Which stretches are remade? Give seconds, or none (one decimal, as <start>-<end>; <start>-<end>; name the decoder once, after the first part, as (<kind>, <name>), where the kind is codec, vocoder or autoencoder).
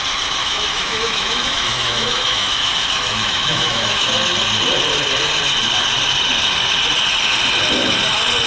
0.4-4.1 (autoencoder, DAC-VAE)